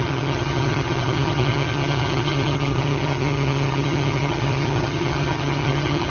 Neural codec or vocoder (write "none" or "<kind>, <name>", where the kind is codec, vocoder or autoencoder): vocoder, HiFi-GAN